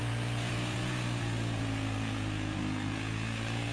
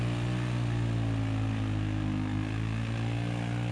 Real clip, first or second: second